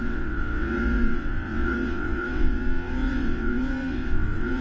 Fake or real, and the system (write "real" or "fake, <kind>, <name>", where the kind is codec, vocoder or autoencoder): fake, vocoder, WaveNeXt